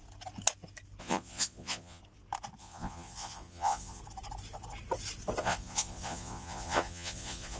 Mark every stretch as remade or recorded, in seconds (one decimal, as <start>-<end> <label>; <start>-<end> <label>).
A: 0.0-1.0 recorded; 1.0-2.0 remade; 2.0-2.6 recorded; 2.6-4.0 remade; 4.0-5.4 recorded; 5.4-7.6 remade